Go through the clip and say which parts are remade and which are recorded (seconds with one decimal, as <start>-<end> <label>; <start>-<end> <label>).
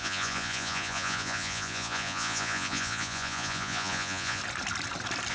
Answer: 0.0-4.4 remade; 4.4-5.3 recorded